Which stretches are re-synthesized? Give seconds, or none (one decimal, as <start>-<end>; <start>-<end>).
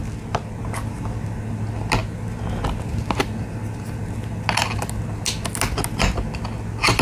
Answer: none